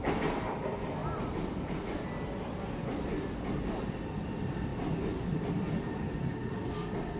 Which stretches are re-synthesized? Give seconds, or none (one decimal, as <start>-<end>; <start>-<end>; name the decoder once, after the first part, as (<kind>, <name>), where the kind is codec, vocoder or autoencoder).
none